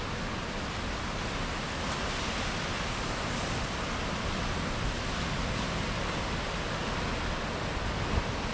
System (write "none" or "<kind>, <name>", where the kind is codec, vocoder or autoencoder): none